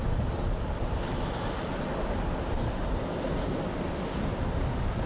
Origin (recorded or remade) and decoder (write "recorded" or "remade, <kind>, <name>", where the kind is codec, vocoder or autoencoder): recorded